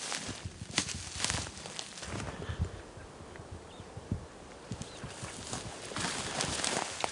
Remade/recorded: recorded